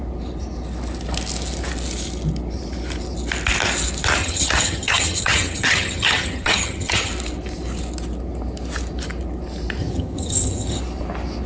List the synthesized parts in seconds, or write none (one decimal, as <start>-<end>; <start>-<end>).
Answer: 4.2-7.1; 9.8-10.8